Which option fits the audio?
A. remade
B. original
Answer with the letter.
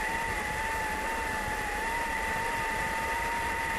B